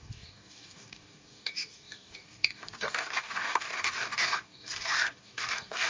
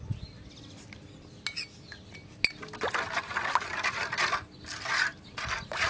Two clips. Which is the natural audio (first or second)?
second